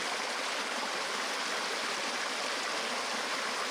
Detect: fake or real real